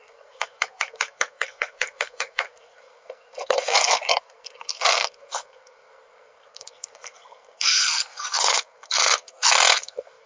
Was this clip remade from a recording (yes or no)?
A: yes